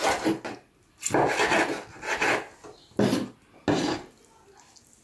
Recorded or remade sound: recorded